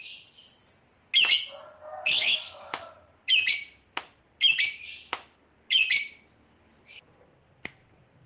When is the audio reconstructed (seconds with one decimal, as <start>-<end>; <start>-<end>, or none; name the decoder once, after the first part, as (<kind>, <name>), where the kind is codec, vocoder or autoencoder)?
2.2-2.9 (codec, DAC)